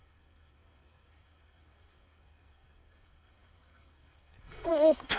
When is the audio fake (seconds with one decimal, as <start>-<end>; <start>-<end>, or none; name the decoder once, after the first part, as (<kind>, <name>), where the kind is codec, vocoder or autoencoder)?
0.0-5.2 (codec, SNAC)